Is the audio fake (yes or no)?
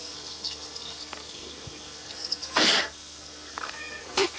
yes